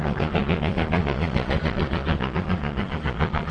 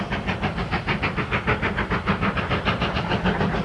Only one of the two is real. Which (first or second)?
second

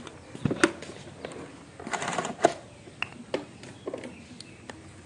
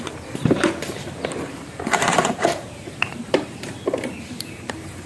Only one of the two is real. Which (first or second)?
first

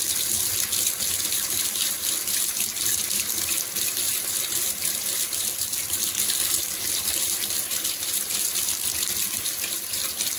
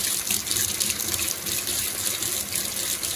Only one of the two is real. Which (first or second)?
second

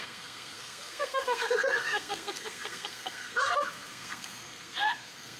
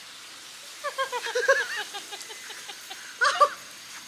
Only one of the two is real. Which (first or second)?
second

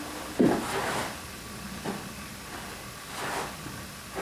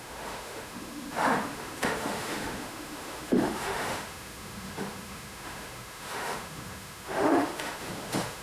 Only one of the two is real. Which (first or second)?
first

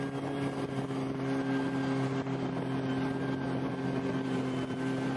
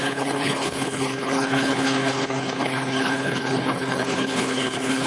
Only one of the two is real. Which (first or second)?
first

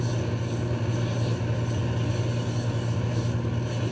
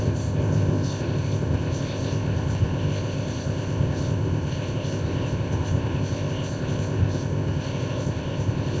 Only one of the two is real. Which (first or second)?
first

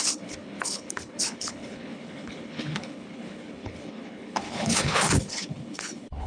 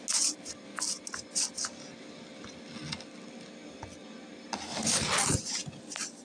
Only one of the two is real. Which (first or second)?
second